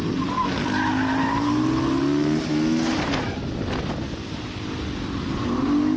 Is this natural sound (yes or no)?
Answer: yes